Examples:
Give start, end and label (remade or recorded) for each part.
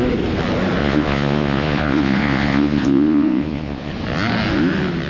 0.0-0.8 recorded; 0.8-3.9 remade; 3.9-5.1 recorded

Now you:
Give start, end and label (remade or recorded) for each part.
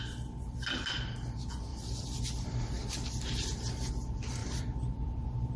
0.0-1.7 recorded; 1.7-2.2 remade; 2.2-4.4 recorded; 4.4-5.6 remade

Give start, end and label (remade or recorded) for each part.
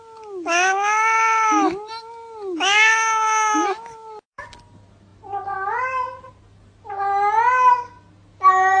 0.0-8.8 recorded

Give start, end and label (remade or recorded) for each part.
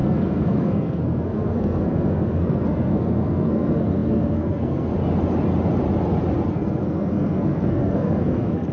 0.0-4.9 remade; 4.9-6.5 recorded; 6.5-8.7 remade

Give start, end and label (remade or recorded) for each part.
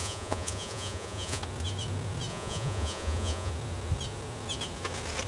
0.0-1.4 remade; 1.4-2.3 recorded; 2.3-3.5 remade; 3.5-5.3 recorded